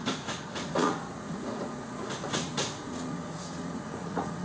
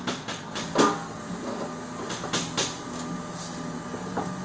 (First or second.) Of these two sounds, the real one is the second